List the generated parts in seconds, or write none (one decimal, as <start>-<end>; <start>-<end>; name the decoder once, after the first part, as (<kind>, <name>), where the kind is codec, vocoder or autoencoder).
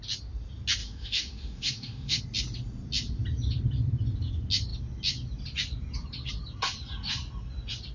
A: 0.8-2.2 (autoencoder, DAC-VAE)